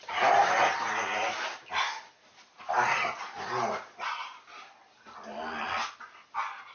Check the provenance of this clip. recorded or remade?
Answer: recorded